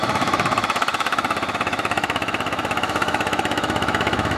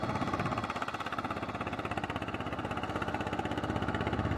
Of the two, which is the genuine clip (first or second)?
second